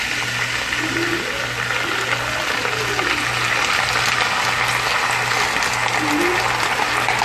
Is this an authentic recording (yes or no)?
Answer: yes